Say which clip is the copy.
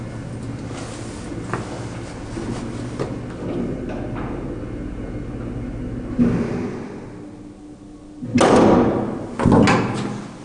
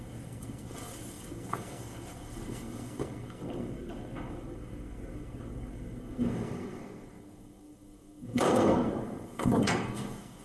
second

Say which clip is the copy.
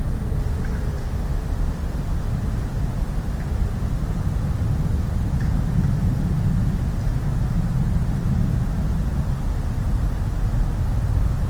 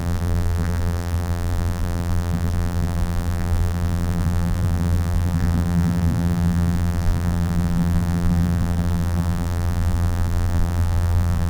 second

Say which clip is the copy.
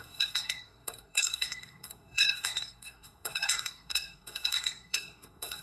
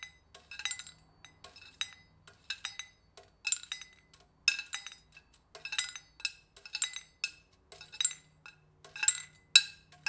first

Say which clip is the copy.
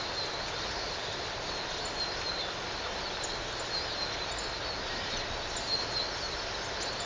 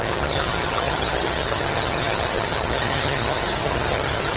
second